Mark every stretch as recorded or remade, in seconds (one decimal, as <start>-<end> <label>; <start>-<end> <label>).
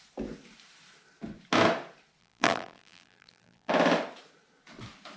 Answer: 0.0-2.2 recorded; 2.2-3.7 remade; 3.7-5.2 recorded